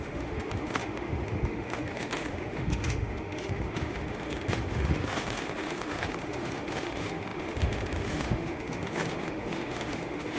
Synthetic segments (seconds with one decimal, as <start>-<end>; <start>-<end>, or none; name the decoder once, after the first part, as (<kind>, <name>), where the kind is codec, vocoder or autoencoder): 0.0-10.4 (autoencoder, DAC-VAE)